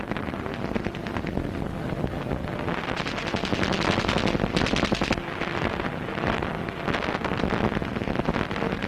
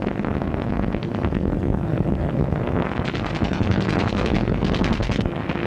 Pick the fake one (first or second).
second